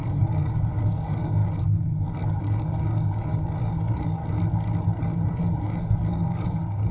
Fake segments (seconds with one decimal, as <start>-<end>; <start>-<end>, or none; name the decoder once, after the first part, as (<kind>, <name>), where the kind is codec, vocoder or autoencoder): 0.0-1.4 (codec, DAC); 2.4-4.2; 5.0-6.9